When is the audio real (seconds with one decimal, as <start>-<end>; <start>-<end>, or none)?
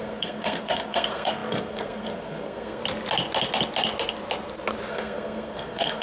2.8-4.9